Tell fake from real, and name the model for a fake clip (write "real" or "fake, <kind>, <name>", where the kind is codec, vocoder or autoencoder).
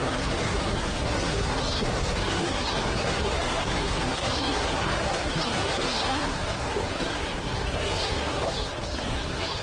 fake, codec, SNAC